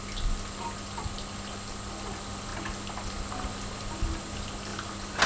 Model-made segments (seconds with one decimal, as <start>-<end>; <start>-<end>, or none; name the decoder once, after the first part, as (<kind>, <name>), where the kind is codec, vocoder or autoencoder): none